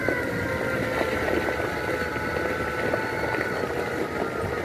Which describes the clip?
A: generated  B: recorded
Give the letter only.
B